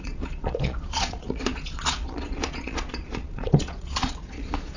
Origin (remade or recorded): remade